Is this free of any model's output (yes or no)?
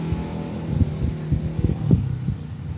yes